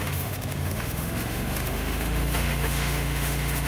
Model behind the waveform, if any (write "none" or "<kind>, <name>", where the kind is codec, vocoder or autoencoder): autoencoder, DAC-VAE